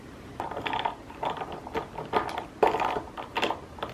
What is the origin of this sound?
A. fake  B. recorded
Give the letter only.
B